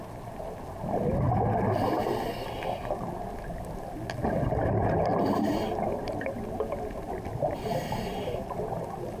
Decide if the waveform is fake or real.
real